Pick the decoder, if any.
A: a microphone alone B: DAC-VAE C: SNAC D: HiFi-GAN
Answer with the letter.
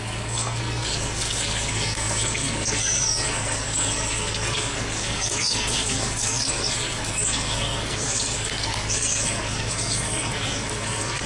C